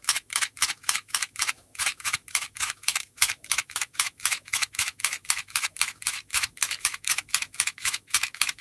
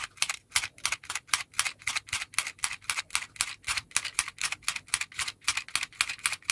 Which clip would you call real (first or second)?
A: second